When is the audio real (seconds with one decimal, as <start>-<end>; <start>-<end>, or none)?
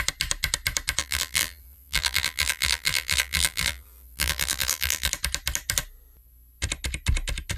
0.0-1.0; 5.1-7.6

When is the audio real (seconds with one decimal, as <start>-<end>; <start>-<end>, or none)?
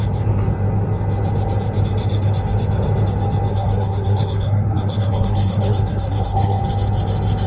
0.0-3.5; 6.6-7.5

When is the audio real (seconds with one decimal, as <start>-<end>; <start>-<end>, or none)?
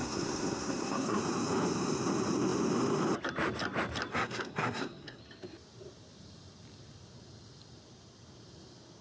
1.2-4.1; 5.2-9.0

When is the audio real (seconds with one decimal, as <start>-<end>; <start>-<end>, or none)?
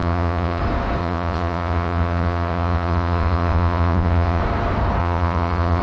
0.6-1.0; 4.4-5.0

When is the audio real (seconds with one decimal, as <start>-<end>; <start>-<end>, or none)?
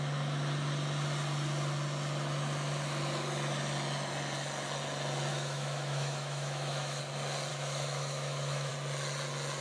0.0-5.3; 7.0-7.5; 8.7-9.6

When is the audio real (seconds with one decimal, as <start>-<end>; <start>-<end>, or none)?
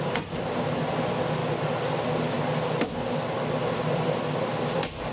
0.0-5.1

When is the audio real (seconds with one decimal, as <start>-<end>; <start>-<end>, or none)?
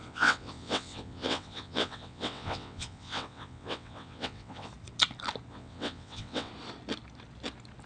4.7-5.5; 6.5-7.9